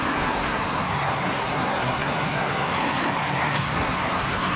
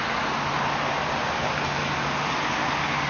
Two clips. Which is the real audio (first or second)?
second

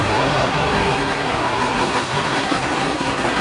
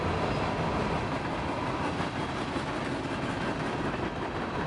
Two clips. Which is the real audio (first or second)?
second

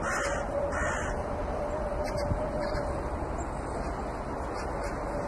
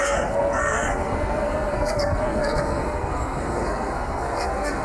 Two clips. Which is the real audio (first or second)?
first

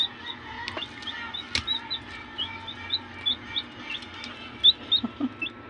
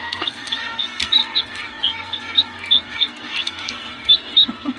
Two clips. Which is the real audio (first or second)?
first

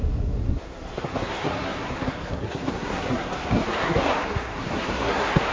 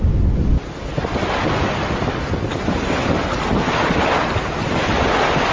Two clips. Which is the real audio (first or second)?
second